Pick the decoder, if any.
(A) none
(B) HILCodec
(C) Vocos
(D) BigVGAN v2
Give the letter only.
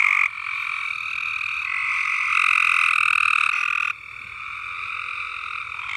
A